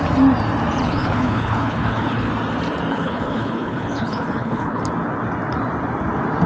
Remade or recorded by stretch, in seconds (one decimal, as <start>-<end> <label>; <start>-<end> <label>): 0.0-0.8 recorded; 0.8-2.3 remade; 2.3-2.9 recorded; 2.9-4.8 remade; 4.8-6.5 recorded

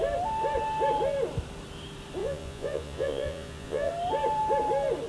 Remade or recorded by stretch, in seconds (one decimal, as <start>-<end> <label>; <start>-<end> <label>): 0.0-2.2 recorded; 2.2-3.9 remade; 3.9-5.1 recorded

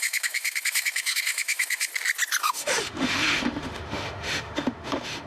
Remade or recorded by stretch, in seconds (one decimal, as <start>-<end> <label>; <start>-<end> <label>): 0.0-1.9 remade; 1.9-2.4 recorded; 2.4-5.3 remade

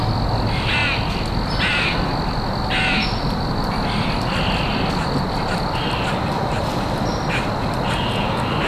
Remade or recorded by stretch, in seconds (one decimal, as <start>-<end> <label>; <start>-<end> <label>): 0.0-8.7 recorded